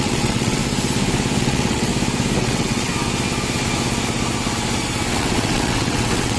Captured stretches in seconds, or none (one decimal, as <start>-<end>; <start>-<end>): 0.6-1.4; 1.9-2.4; 2.9-5.1